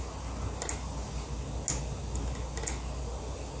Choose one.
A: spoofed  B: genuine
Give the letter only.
B